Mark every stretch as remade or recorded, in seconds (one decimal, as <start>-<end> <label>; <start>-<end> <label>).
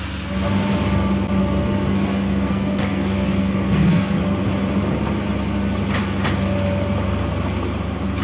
0.0-1.4 recorded; 1.4-4.2 remade; 4.2-8.2 recorded